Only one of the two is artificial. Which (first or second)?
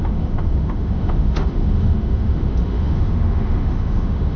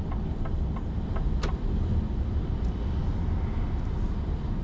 first